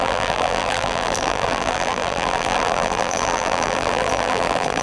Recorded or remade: remade